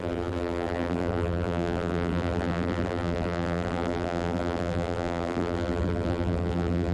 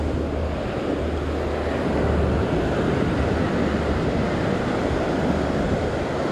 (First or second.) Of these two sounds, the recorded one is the second